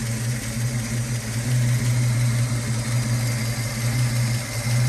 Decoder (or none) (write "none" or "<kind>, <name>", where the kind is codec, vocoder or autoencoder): none